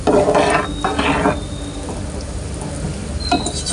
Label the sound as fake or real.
real